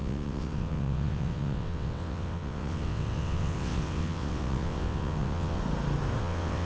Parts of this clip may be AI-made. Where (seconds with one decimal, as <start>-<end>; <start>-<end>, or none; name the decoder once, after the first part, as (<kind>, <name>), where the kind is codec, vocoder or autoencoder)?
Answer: 0.0-5.6 (vocoder, WaveNeXt); 6.2-6.7